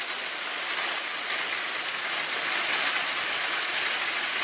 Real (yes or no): yes